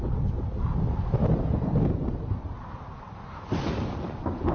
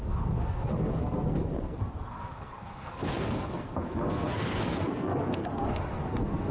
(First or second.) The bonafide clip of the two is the first